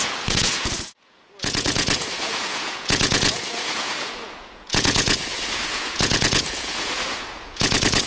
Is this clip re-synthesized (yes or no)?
yes